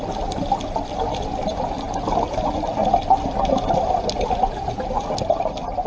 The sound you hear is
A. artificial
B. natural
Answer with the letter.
B